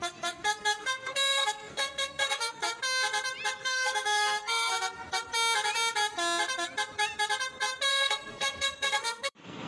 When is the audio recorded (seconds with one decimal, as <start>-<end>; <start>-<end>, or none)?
2.6-3.6; 4.7-7.9